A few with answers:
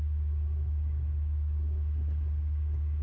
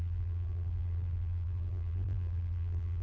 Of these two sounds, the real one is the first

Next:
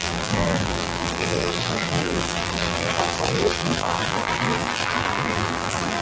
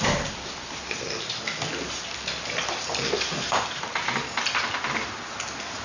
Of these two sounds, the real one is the second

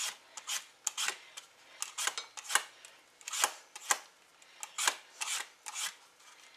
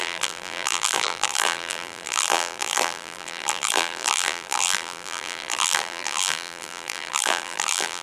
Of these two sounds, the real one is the first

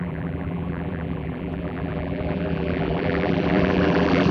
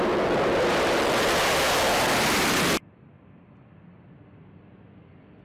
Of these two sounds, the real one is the second